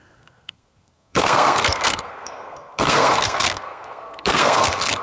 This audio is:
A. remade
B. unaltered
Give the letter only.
A